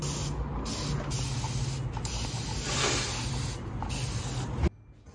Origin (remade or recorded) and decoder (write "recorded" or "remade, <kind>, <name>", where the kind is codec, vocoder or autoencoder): recorded